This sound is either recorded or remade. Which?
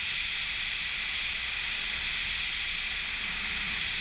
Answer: recorded